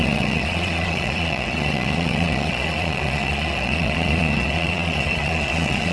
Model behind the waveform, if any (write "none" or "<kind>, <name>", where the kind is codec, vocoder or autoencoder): vocoder, Vocos